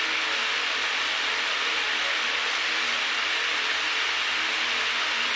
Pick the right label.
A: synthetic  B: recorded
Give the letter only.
B